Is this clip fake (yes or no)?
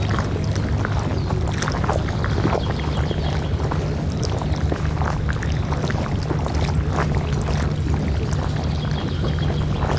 no